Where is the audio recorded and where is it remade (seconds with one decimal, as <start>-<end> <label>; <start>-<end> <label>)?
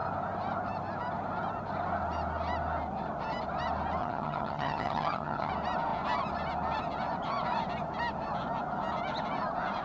0.0-4.0 recorded; 4.0-5.5 remade; 5.5-9.8 recorded